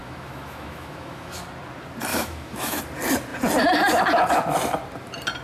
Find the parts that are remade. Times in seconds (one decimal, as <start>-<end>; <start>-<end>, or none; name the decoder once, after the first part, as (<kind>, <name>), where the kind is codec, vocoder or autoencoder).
0.0-1.4 (autoencoder, DAC-VAE); 2.1-2.8